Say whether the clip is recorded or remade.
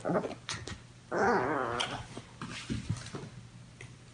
recorded